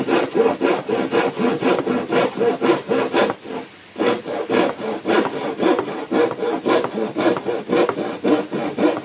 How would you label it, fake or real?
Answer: real